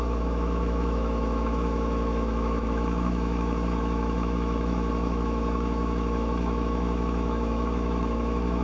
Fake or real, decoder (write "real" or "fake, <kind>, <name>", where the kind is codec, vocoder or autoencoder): fake, autoencoder, DAC-VAE